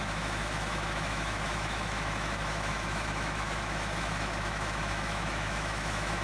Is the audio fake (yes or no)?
yes